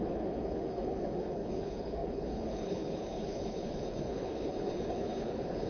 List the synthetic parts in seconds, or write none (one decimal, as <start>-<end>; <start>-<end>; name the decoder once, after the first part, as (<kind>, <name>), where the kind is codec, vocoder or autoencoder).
0.0-5.7 (codec, HILCodec)